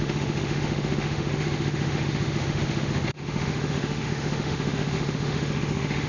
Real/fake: fake